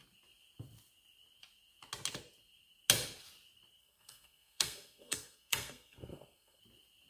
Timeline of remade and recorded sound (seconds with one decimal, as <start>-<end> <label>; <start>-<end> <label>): 0.0-3.8 recorded; 3.8-6.6 remade; 6.6-7.1 recorded